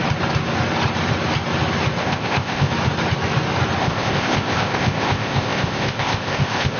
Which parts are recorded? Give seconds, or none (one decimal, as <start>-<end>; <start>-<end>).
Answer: 0.0-2.0; 2.7-3.8

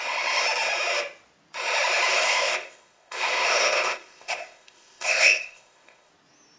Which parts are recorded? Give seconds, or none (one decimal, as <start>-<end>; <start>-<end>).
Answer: 0.0-2.1; 6.1-6.6

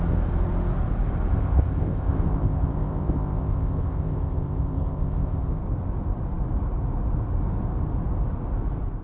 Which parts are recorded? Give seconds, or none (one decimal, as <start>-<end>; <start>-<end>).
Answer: 0.0-1.3; 5.6-9.0

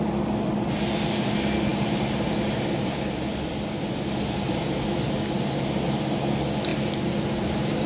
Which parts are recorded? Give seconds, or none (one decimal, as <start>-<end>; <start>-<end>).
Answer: 0.0-7.9

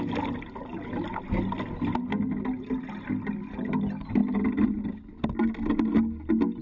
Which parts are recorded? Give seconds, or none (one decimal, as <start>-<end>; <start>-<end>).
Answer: 0.0-6.6

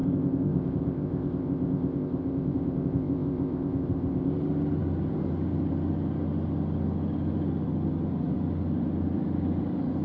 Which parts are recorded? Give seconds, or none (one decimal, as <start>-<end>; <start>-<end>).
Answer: 4.3-10.0

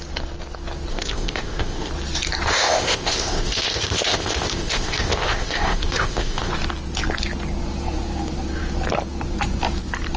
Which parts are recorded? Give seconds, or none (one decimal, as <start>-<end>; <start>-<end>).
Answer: 0.0-0.9; 1.9-2.5; 6.5-10.2

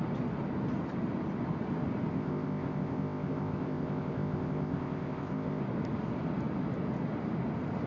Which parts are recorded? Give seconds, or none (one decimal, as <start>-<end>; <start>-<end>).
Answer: 0.0-2.1; 5.6-7.9